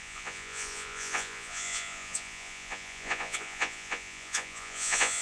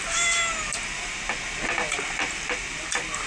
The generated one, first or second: first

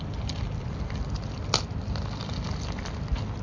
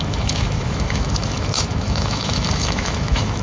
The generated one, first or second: second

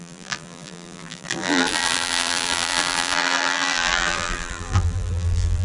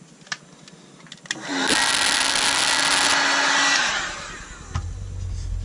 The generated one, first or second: first